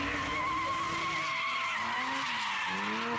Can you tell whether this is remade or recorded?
recorded